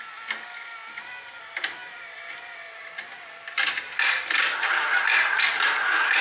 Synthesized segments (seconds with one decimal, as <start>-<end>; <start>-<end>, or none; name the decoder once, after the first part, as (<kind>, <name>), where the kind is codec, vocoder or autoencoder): 0.8-1.4 (vocoder, BigVGAN v2); 1.8-5.5